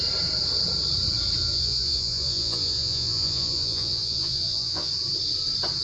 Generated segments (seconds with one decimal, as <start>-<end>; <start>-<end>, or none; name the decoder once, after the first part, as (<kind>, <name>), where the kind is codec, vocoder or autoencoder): 1.4-4.9 (vocoder, Vocos)